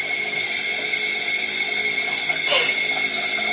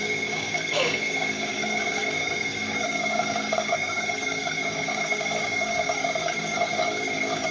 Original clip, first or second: first